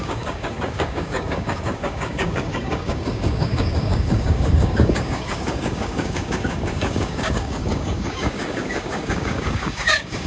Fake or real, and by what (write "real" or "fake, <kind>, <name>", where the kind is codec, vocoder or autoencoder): fake, codec, DAC